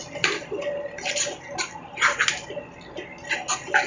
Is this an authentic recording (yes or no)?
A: yes